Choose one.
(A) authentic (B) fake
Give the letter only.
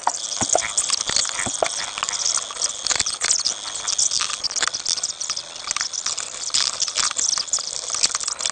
A